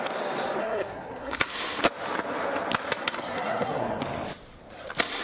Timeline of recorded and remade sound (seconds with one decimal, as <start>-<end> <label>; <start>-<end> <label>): 0.0-0.6 recorded; 0.6-1.5 remade; 1.5-3.0 recorded; 3.0-4.0 remade; 4.0-5.2 recorded

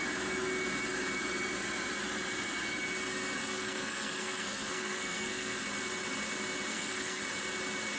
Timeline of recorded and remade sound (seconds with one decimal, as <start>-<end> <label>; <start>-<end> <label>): 0.0-3.4 recorded; 3.4-5.6 remade; 5.6-6.7 recorded; 6.7-7.2 remade; 7.2-8.0 recorded

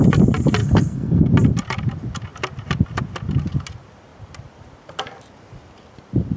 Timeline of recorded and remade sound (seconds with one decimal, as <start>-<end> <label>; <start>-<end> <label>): 0.0-0.6 recorded; 0.6-1.3 remade; 1.3-6.4 recorded

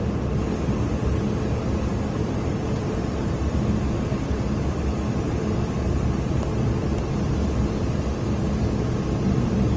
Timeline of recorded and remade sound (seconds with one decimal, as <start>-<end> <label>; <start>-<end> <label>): 0.0-9.8 recorded